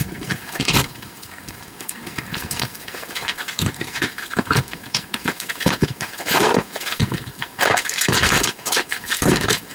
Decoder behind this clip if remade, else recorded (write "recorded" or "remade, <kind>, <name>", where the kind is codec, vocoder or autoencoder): remade, codec, SNAC